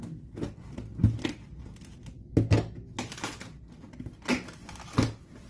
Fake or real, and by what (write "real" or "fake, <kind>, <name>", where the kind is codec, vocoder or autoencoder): real